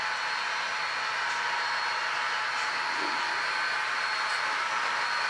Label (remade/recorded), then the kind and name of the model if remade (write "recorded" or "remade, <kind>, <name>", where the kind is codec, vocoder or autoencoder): recorded